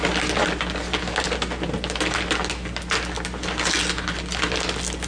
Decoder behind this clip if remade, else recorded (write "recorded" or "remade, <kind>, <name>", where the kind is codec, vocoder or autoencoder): recorded